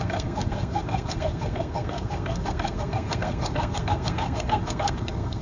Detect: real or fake fake